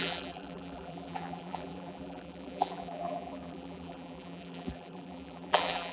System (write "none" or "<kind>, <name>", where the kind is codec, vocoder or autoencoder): vocoder, BigVGAN v2